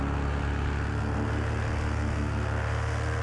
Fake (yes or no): no